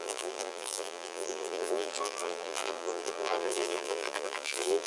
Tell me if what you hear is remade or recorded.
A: remade